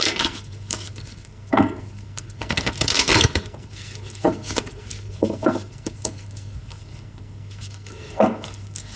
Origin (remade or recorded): remade